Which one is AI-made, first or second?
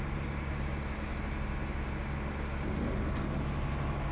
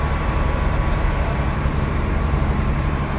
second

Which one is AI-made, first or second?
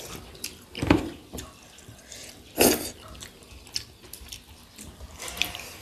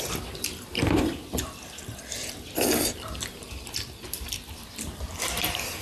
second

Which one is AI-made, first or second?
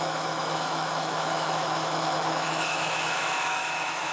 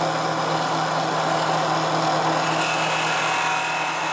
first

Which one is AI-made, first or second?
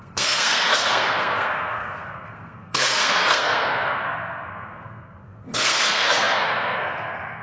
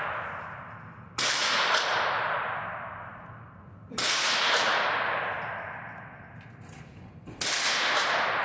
first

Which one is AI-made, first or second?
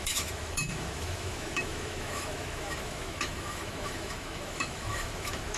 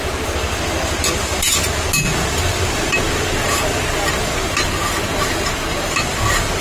first